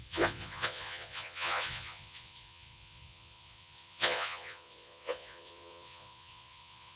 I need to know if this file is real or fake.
fake